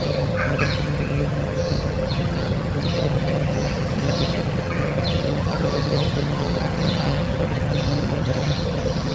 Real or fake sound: fake